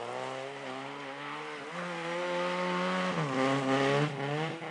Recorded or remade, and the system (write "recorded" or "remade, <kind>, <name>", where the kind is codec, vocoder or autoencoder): recorded